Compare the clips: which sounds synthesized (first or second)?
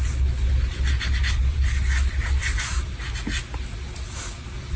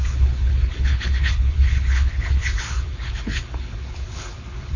second